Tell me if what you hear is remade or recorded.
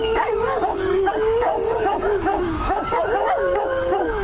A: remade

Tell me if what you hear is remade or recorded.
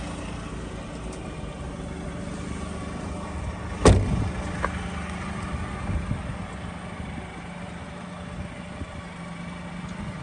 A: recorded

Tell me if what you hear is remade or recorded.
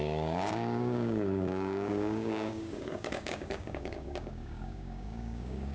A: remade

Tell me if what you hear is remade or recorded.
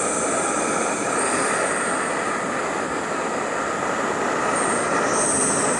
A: recorded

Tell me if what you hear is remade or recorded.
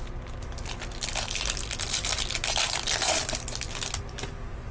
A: recorded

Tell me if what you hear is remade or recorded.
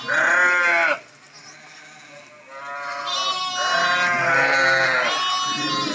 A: recorded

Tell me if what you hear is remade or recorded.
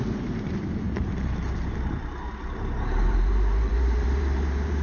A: remade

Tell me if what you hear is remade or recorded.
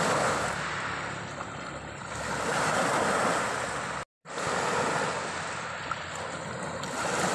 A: recorded